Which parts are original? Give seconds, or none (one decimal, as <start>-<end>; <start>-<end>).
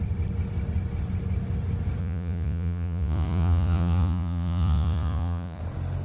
0.0-2.0; 5.6-6.0